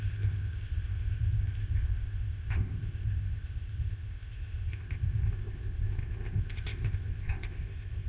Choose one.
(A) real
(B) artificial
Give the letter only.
B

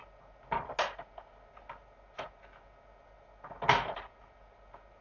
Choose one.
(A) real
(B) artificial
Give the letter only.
A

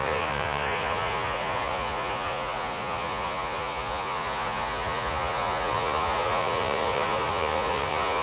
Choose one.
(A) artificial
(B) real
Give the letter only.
A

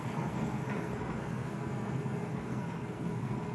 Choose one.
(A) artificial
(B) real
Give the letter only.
A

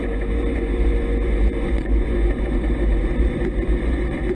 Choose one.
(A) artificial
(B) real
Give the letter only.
A